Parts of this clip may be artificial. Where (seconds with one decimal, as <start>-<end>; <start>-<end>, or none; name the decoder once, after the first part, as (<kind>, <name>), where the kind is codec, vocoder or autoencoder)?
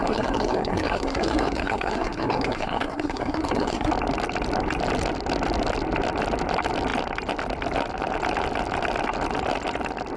0.0-3.9 (codec, SNAC)